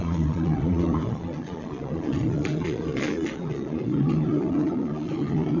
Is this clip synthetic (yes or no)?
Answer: yes